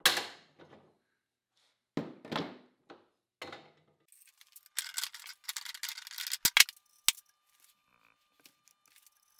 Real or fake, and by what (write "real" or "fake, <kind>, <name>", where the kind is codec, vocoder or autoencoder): real